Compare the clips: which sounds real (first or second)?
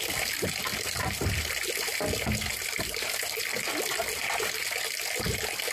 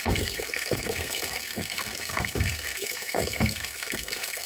first